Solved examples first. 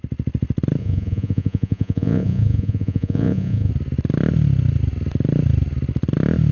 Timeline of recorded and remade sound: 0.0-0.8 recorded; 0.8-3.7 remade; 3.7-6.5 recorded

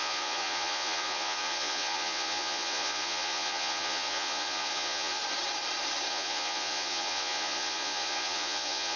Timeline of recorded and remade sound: 0.0-5.2 remade; 5.2-6.1 recorded; 6.1-9.0 remade